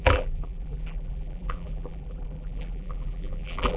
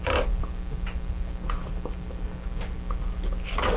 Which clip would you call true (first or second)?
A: second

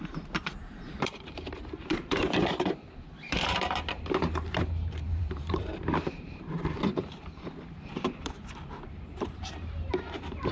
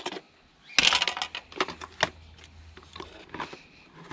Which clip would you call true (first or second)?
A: second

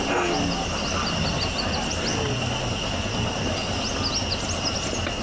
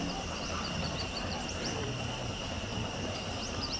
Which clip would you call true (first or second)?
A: first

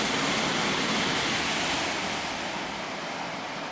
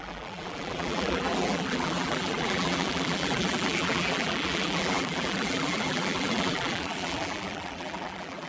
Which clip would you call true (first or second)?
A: first